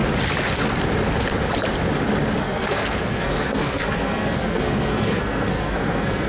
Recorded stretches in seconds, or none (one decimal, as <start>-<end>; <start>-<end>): 0.0-2.4